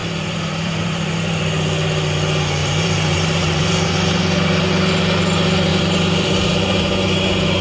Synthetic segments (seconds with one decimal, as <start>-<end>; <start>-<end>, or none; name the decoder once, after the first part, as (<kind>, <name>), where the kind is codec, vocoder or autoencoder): 0.0-1.4 (vocoder, BigVGAN v2); 2.6-4.2; 5.7-6.8